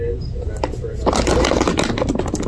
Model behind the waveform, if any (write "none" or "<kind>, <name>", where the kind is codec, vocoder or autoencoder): none